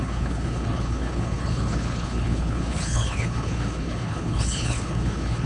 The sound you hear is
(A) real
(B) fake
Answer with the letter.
B